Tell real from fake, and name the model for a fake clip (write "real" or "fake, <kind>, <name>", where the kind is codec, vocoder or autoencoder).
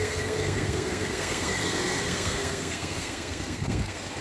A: fake, codec, SNAC